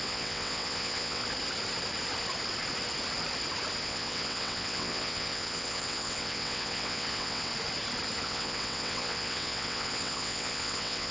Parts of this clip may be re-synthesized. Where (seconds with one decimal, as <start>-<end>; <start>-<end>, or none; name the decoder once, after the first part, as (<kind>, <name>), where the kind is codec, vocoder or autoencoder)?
0.0-1.2 (vocoder, WaveNeXt); 3.8-7.5; 8.2-11.1